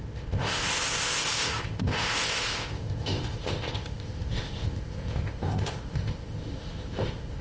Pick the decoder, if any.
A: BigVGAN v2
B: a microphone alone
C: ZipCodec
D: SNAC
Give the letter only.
C